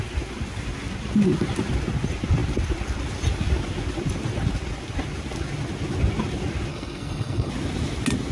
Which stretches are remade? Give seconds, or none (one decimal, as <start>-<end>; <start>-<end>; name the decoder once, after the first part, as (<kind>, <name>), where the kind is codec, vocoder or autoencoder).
6.7-7.5 (codec, SNAC)